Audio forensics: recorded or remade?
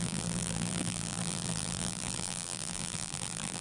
remade